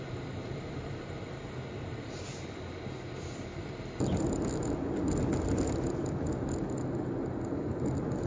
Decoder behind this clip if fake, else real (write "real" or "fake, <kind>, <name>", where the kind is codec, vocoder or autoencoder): real